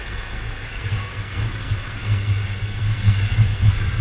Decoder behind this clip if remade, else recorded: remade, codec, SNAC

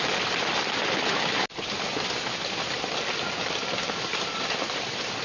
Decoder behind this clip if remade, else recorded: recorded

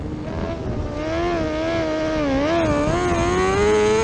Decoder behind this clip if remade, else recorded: recorded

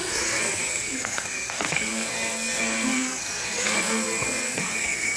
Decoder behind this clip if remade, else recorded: remade, codec, SNAC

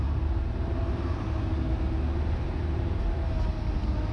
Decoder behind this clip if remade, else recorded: recorded